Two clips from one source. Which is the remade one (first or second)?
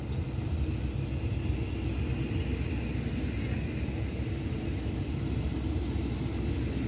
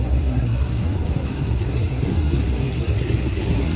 second